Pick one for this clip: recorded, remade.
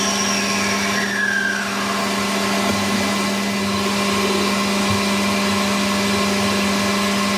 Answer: recorded